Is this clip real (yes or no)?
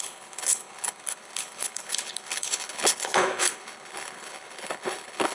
no